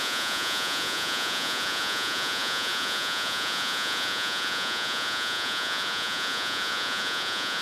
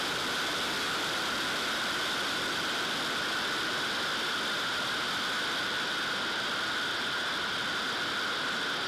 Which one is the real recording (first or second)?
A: second